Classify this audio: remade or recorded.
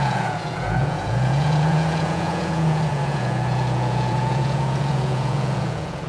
remade